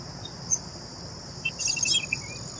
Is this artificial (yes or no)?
no